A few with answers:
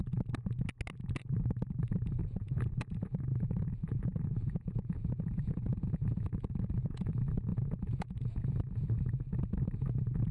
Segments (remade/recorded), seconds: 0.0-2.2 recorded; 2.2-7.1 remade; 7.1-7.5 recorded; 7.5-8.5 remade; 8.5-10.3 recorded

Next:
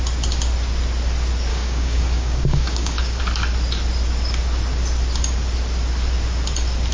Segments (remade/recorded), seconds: 0.0-1.5 recorded; 1.5-3.2 remade; 3.2-6.9 recorded

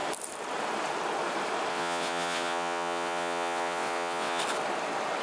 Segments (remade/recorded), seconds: 0.0-1.7 recorded; 1.7-4.4 remade; 4.4-5.2 recorded